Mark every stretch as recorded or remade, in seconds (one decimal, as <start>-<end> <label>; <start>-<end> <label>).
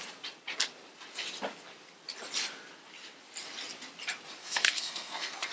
0.0-4.4 recorded; 4.4-5.5 remade